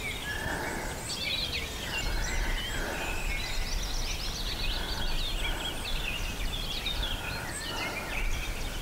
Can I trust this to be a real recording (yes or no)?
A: yes